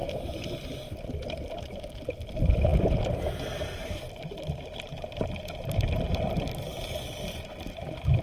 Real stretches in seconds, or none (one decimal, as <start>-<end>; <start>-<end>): 0.0-3.8; 6.3-8.2